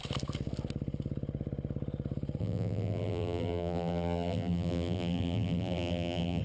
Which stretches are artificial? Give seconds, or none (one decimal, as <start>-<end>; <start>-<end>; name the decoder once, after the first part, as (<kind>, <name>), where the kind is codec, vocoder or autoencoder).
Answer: 2.4-6.4 (vocoder, BigVGAN v2)